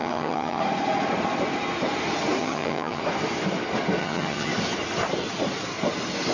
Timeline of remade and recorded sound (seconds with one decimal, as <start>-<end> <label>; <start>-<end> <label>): 0.0-0.6 remade; 0.6-2.4 recorded; 2.4-3.0 remade; 3.0-4.0 recorded; 4.0-4.5 remade; 4.5-6.3 recorded